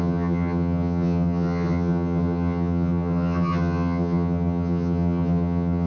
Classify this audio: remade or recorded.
remade